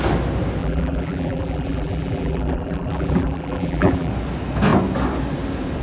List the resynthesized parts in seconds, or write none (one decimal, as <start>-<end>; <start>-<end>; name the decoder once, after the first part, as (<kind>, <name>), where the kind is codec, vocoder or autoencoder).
0.6-4.1 (vocoder, BigVGAN v2)